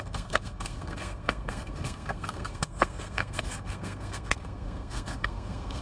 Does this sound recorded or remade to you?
remade